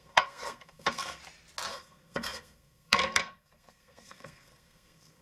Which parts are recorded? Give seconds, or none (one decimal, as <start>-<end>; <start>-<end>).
1.2-1.7